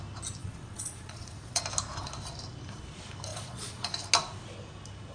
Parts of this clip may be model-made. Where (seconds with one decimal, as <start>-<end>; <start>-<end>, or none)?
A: 0.4-1.6; 3.3-3.9